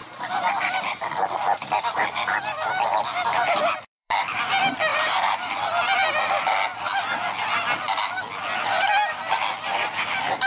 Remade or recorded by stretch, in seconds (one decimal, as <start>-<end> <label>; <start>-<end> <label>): 0.0-1.1 remade; 1.1-1.6 recorded; 1.6-2.2 remade; 2.2-2.9 recorded; 2.9-4.5 remade; 4.5-4.9 recorded; 4.9-5.5 remade; 5.5-10.5 recorded